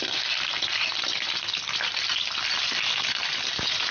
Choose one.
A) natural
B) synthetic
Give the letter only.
A